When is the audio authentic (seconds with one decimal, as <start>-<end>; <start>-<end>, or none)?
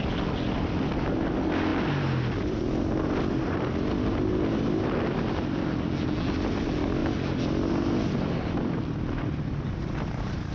0.0-10.5